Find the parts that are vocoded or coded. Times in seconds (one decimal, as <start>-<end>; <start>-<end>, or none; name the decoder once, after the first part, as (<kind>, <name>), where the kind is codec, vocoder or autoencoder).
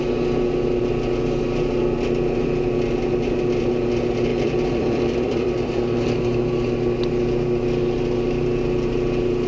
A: 4.3-6.2 (vocoder, BigVGAN v2)